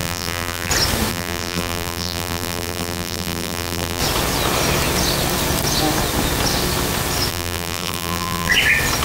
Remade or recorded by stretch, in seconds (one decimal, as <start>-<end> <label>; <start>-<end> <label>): 0.0-0.7 remade; 0.7-1.1 recorded; 1.1-4.0 remade; 4.0-7.3 recorded; 7.3-8.5 remade; 8.5-9.0 recorded